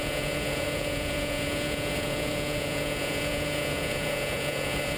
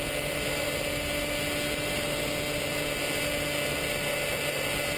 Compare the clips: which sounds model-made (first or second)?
first